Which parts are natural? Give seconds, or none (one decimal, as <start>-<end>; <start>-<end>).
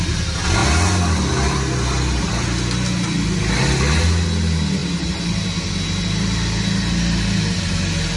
0.0-8.2